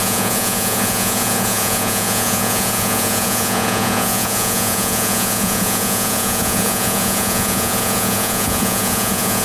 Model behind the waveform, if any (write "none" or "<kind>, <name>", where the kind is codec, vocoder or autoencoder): vocoder, Vocos